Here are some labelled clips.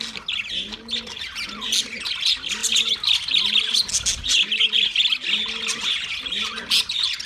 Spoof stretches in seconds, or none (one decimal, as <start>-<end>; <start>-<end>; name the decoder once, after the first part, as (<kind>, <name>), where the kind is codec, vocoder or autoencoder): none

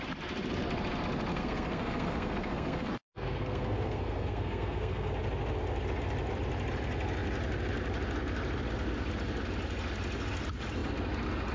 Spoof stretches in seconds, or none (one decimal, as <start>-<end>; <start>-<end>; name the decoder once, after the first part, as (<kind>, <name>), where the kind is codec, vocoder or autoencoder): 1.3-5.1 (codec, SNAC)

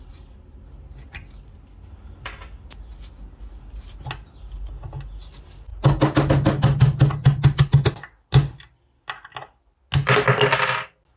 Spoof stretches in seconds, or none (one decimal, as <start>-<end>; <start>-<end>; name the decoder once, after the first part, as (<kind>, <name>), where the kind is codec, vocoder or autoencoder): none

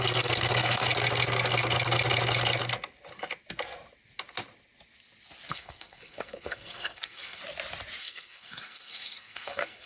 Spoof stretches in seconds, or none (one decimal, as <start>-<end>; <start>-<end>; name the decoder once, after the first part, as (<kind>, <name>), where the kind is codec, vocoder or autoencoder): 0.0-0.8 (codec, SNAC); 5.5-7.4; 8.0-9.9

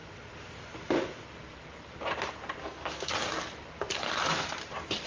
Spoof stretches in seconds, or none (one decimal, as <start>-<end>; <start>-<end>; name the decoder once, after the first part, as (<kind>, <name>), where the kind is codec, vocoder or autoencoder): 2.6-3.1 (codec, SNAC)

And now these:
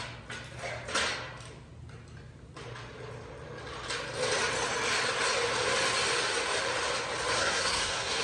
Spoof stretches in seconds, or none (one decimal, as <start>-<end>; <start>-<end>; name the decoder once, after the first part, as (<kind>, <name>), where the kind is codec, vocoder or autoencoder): 7.4-8.2 (codec, SNAC)

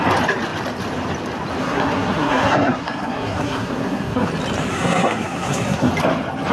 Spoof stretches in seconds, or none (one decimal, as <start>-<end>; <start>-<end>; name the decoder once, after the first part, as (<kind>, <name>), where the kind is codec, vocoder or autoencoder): 1.6-4.3 (codec, SNAC); 4.7-5.9